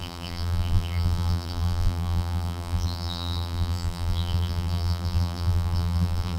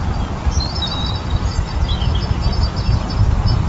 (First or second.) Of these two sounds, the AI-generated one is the first